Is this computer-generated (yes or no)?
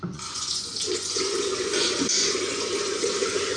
yes